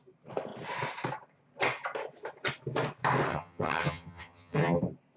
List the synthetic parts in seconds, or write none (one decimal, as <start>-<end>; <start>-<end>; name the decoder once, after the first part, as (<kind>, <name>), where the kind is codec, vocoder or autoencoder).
3.3-4.8 (vocoder, HiFi-GAN)

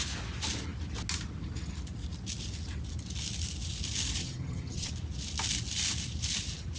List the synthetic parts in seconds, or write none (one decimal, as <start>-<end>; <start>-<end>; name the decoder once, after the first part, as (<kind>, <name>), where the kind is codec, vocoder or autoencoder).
4.2-4.9 (vocoder, HiFi-GAN)